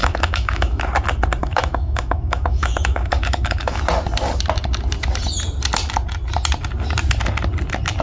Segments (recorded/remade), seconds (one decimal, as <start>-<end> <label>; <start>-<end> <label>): 0.0-0.8 remade; 0.8-1.4 recorded; 1.4-3.8 remade; 3.8-8.0 recorded